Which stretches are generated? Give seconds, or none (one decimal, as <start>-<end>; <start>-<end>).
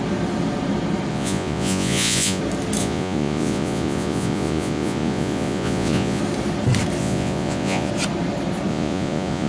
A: 1.1-2.4; 2.8-6.2; 7.0-7.9; 8.7-9.5